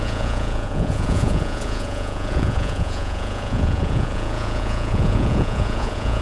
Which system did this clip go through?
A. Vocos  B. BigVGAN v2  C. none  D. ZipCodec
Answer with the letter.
A